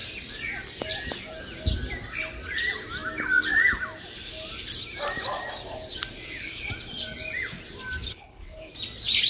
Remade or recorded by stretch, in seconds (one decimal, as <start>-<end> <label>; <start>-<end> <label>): 0.0-8.1 recorded; 8.1-8.7 remade; 8.7-9.3 recorded